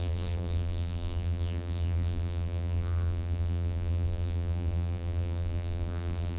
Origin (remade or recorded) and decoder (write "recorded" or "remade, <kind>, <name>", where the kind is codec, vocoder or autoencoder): remade, vocoder, BigVGAN v2